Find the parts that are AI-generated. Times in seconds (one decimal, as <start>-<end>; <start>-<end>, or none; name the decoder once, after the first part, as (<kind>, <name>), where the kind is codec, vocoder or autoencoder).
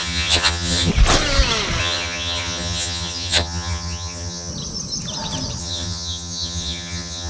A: 0.0-0.9 (vocoder, HiFi-GAN); 1.8-4.5; 5.6-7.3